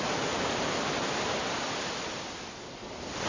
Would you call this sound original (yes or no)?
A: yes